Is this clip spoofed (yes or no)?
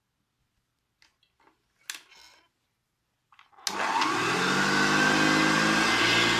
no